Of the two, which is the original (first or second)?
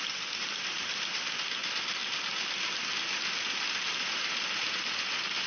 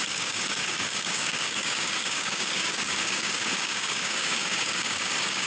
first